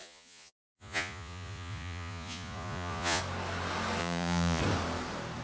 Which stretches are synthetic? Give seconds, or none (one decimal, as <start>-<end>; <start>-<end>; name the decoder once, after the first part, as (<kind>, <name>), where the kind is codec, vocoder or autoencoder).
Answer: 0.0-3.2 (vocoder, Vocos); 4.0-4.6